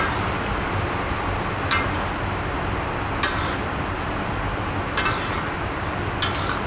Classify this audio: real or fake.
real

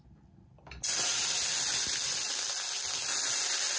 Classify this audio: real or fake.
real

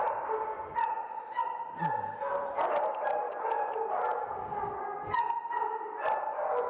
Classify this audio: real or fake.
real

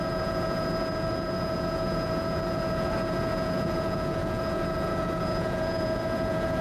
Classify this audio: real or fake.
fake